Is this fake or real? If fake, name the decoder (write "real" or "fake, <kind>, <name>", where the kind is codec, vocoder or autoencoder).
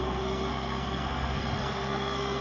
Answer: fake, codec, SNAC